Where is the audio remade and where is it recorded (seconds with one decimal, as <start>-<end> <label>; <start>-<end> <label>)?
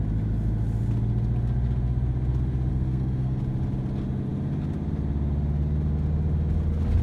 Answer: 0.0-2.7 recorded; 2.7-3.4 remade; 3.4-7.0 recorded